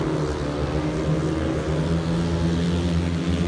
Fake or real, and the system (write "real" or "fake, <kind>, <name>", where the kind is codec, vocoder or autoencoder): real